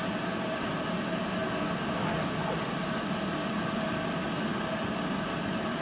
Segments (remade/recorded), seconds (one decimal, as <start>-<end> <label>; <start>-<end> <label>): 0.0-0.7 remade; 0.7-5.8 recorded